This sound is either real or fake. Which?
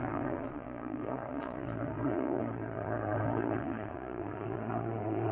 fake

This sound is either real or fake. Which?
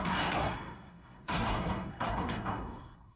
fake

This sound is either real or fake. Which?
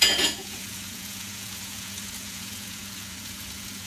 fake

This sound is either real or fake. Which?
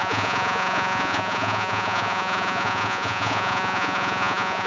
fake